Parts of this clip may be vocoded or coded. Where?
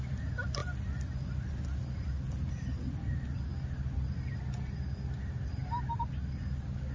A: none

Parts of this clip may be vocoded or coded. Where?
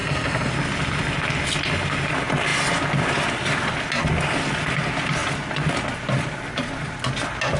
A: 0.0-0.5 (codec, SNAC)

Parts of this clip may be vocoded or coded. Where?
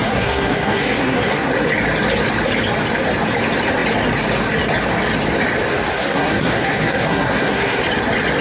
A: 0.0-1.5 (codec, SNAC); 5.9-7.8